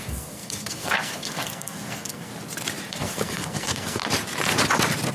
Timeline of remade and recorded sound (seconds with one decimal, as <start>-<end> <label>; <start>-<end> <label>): 0.0-2.3 remade; 2.3-2.9 recorded; 2.9-4.0 remade; 4.0-5.1 recorded